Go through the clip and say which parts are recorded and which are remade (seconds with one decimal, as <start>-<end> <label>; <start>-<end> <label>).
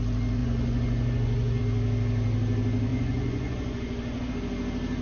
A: 0.0-0.4 recorded; 0.4-1.6 remade; 1.6-2.9 recorded; 2.9-4.3 remade; 4.3-5.0 recorded